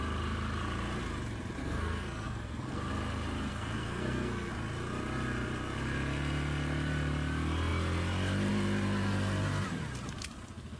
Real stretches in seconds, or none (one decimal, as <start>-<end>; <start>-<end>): 0.0-1.6; 2.9-3.5; 4.5-10.8

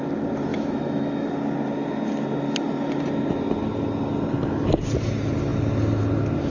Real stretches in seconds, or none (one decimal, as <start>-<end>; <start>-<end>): 0.0-0.5; 1.3-6.5

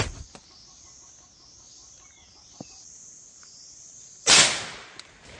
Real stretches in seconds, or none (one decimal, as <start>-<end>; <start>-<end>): 0.0-5.4

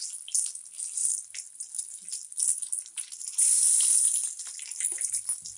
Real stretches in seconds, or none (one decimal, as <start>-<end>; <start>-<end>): 0.0-5.6

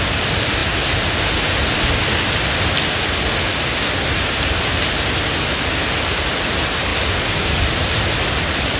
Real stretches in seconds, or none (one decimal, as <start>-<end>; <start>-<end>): 0.0-8.8

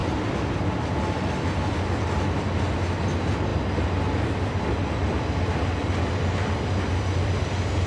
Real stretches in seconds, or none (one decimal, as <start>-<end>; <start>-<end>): 1.7-7.9

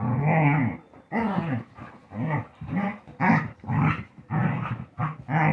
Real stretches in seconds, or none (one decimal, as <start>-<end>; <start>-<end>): 0.0-5.5

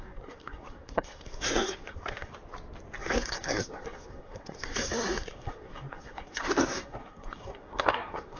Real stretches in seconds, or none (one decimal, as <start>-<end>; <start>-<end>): 2.3-3.0